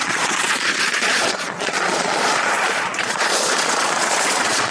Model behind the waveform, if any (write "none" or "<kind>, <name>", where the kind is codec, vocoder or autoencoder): vocoder, Vocos